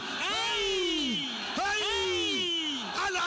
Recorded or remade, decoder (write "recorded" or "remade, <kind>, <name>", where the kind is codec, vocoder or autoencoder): recorded